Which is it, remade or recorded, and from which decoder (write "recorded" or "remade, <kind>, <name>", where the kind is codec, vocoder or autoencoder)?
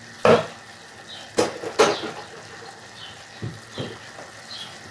recorded